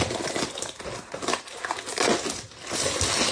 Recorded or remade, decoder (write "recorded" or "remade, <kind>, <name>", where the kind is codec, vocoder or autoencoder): recorded